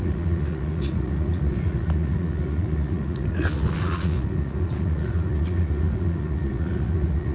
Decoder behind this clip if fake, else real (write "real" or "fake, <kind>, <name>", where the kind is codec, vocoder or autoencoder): fake, vocoder, Vocos